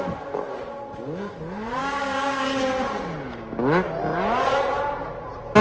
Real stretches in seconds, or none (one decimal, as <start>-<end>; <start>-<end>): 0.0-1.8; 2.6-5.6